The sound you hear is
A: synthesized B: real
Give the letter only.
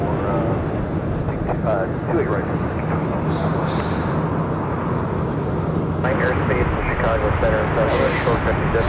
B